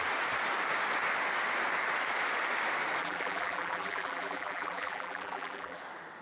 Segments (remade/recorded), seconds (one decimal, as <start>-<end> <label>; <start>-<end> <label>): 0.0-3.0 recorded; 3.0-5.8 remade; 5.8-6.2 recorded